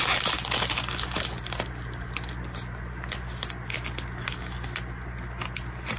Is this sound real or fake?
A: real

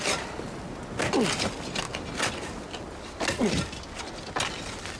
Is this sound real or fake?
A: real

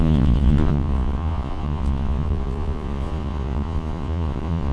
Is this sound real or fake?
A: fake